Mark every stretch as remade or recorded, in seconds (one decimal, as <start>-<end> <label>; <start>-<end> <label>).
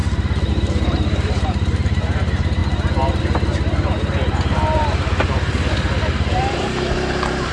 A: 0.0-0.5 recorded; 0.5-2.6 remade; 2.6-3.2 recorded; 3.2-7.5 remade